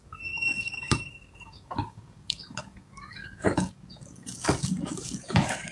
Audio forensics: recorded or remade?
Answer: remade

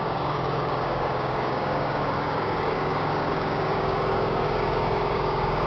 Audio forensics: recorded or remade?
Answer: remade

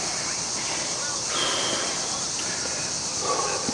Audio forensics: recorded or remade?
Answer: recorded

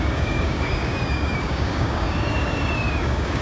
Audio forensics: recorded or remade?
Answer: remade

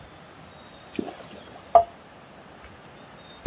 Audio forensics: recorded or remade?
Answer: recorded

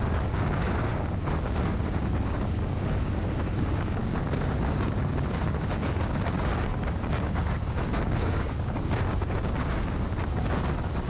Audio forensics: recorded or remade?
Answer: remade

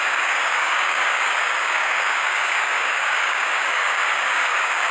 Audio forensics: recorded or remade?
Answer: remade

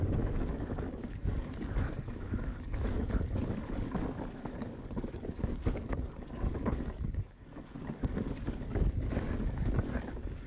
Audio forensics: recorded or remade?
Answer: remade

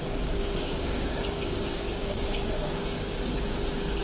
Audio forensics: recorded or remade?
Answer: remade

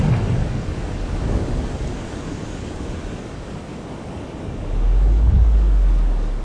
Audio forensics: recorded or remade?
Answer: remade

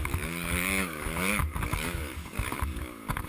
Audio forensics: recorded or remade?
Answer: remade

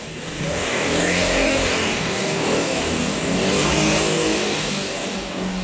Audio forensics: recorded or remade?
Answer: remade